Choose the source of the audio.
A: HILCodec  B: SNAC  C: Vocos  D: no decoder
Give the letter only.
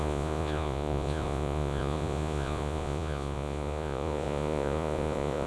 C